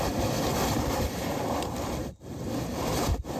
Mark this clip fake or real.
fake